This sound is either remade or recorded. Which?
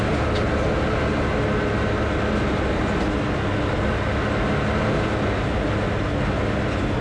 recorded